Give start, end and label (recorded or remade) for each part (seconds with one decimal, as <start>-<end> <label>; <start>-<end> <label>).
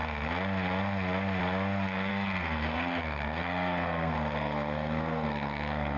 0.0-2.1 recorded; 2.1-6.0 remade